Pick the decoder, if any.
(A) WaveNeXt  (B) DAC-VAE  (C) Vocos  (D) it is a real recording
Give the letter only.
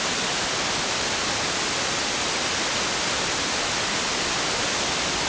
D